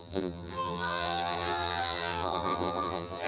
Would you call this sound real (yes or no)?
no